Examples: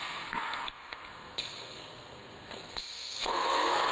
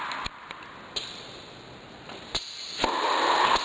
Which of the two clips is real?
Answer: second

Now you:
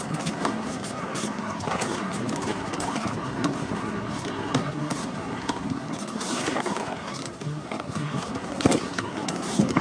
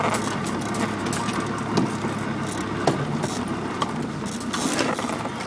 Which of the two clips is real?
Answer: second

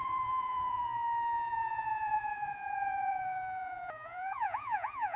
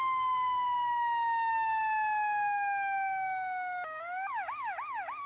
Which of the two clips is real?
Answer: second